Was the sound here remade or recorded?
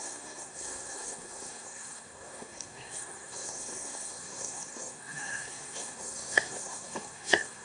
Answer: remade